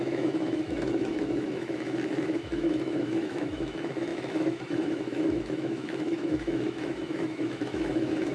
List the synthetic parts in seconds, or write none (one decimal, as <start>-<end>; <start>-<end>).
0.0-8.3